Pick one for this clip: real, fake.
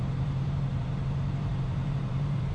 fake